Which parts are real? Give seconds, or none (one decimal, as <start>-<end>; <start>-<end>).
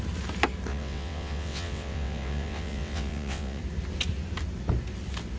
0.0-0.7; 3.6-5.4